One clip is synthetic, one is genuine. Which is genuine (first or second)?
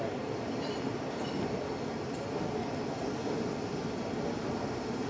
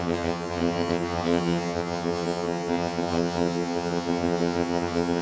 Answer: first